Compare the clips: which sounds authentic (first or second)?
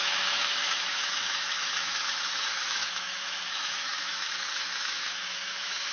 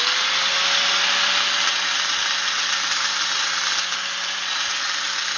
second